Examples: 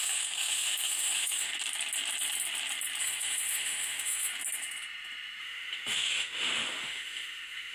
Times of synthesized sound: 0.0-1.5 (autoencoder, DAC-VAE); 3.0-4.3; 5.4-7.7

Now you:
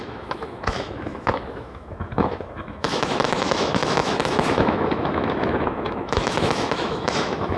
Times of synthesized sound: 0.0-7.6 (autoencoder, DAC-VAE)

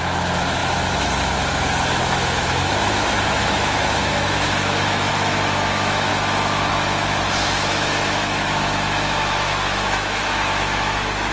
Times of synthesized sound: 0.0-6.1 (autoencoder, DAC-VAE); 6.7-11.3

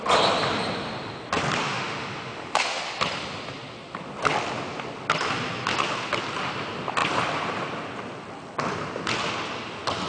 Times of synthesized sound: 1.6-2.8 (autoencoder, DAC-VAE)

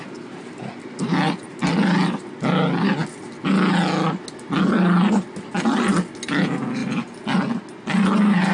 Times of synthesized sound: none